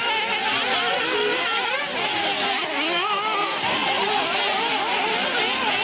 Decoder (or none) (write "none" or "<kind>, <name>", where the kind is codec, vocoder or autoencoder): none